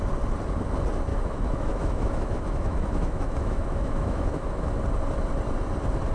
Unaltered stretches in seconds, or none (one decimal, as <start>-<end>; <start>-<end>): 0.0-1.1; 4.8-6.1